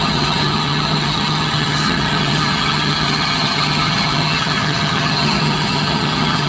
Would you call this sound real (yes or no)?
no